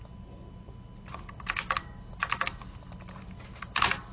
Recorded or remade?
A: recorded